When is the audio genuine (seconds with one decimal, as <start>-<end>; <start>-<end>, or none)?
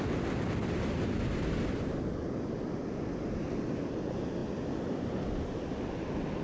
0.0-6.4